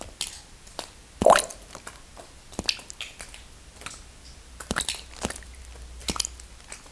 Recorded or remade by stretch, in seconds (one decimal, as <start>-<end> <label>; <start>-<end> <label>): 0.0-6.9 recorded